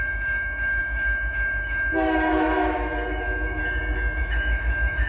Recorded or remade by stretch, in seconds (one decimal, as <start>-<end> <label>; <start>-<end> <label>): 0.0-3.6 remade; 3.6-4.2 recorded; 4.2-5.1 remade